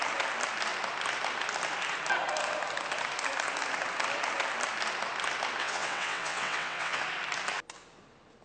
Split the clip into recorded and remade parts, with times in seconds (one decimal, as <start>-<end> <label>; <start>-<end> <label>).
0.0-5.6 recorded; 5.6-7.0 remade; 7.0-8.4 recorded